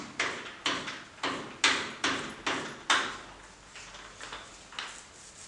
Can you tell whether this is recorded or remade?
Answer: recorded